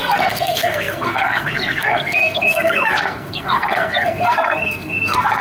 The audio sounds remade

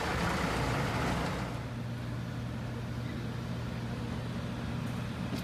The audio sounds recorded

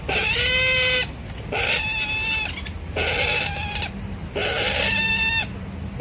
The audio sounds recorded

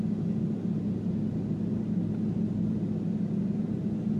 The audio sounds recorded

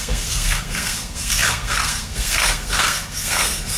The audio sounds remade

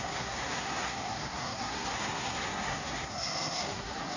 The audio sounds remade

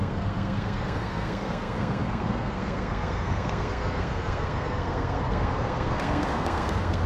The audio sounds remade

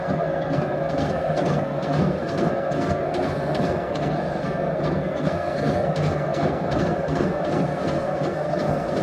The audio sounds remade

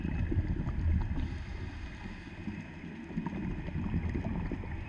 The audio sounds recorded